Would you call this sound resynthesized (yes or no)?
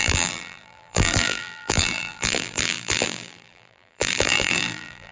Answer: yes